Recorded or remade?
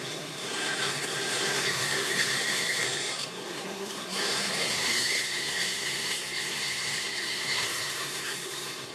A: remade